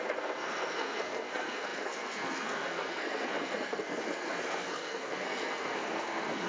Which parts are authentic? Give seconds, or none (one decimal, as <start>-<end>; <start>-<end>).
none